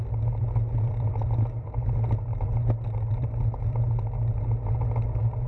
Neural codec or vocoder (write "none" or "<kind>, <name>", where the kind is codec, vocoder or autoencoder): none